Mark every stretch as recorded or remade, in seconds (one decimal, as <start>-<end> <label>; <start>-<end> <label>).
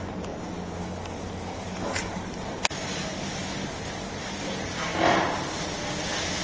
0.0-0.8 recorded; 0.8-2.2 remade; 2.2-6.4 recorded